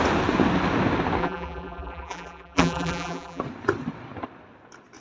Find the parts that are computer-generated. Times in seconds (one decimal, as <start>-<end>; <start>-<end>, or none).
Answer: 1.2-3.4